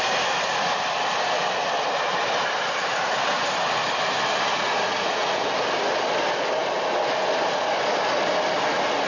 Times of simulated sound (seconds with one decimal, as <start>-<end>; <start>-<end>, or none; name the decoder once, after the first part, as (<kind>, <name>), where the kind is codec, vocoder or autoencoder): 4.5-5.5 (vocoder, Vocos)